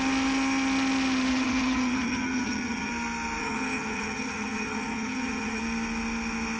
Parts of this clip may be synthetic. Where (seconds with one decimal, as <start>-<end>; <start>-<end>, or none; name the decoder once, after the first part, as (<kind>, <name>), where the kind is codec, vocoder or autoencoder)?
1.3-2.9 (vocoder, HiFi-GAN); 3.4-5.6